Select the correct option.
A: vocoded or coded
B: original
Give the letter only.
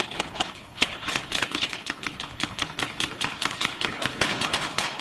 A